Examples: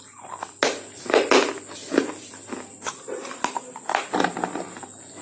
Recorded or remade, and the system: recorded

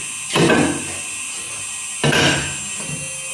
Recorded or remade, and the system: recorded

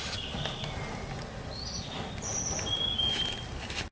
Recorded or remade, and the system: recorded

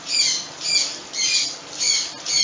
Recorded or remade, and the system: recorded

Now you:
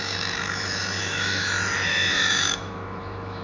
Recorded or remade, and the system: remade, autoencoder, DAC-VAE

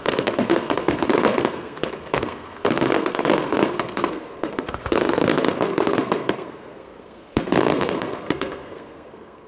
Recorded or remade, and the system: remade, codec, SNAC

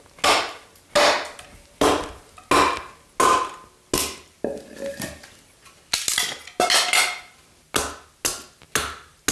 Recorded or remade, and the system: recorded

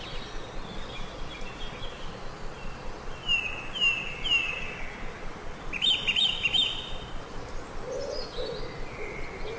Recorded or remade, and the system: recorded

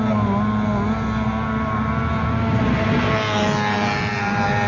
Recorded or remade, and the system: recorded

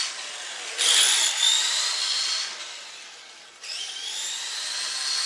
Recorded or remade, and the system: recorded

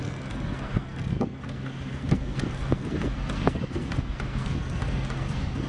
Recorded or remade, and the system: remade, codec, SNAC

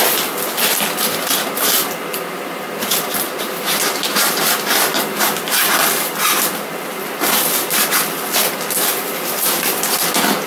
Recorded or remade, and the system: recorded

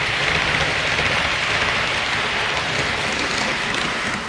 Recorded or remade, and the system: remade, vocoder, BigVGAN v2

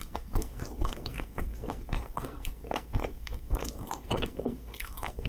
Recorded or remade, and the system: remade, codec, SNAC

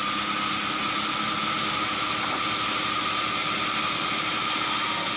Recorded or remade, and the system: recorded